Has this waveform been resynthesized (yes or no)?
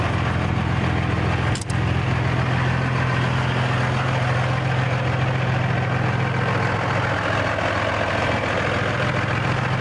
no